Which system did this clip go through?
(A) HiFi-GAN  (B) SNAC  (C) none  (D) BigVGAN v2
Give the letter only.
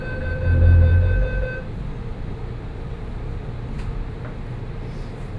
C